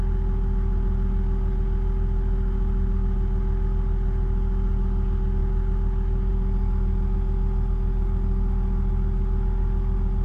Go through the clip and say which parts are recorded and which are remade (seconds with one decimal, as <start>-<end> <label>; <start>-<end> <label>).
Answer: 0.0-10.2 recorded